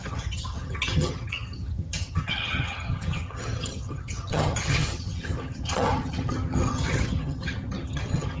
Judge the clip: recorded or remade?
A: remade